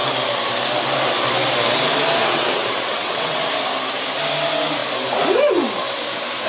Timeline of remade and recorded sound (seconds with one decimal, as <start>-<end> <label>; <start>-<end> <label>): 0.0-2.2 recorded; 2.2-3.5 remade; 3.5-6.5 recorded